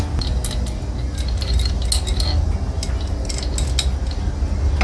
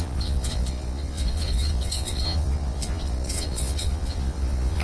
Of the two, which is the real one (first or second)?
first